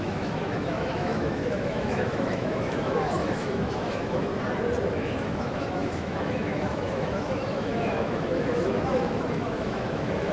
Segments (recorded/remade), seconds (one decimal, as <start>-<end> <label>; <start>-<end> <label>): 0.0-4.3 remade; 4.3-4.9 recorded; 4.9-10.3 remade